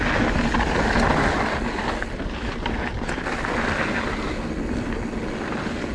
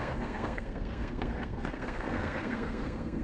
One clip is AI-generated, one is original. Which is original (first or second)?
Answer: first